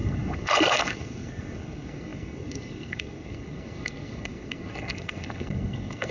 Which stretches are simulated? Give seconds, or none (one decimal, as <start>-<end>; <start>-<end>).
0.0-6.1